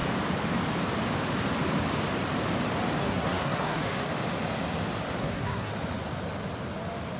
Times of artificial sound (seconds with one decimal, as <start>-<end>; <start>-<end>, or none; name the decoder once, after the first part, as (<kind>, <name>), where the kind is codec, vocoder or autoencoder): 3.0-4.1 (codec, SNAC); 5.2-5.7